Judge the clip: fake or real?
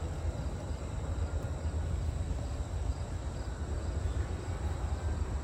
real